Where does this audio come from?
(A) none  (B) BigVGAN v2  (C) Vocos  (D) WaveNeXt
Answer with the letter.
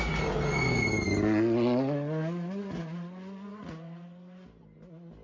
A